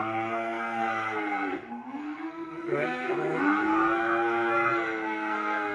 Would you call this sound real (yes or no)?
no